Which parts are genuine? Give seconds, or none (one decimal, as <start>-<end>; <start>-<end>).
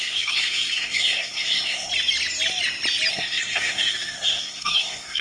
1.9-3.1